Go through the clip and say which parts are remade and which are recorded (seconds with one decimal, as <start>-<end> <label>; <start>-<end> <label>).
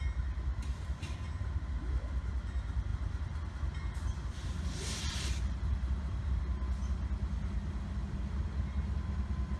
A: 0.0-2.9 recorded; 2.9-6.4 remade; 6.4-8.0 recorded; 8.0-8.6 remade; 8.6-9.6 recorded